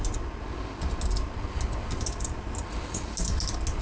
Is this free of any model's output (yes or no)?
yes